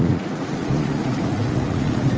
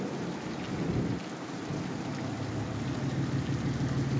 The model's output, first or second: first